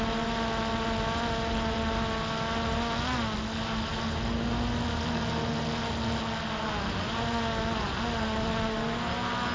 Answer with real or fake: real